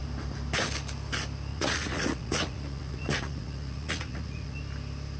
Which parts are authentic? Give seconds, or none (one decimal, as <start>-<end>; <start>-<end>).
0.0-1.5; 4.6-5.2